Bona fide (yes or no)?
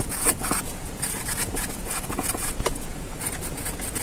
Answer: no